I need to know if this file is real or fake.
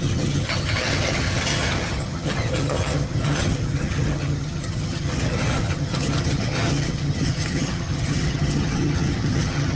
fake